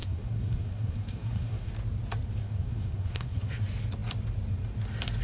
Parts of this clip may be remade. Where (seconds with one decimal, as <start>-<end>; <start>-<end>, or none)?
0.0-1.7; 2.4-3.6